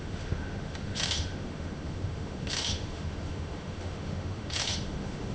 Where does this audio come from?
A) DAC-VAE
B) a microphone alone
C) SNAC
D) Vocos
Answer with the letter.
A